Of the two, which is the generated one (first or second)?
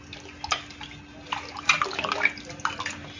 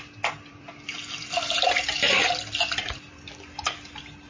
second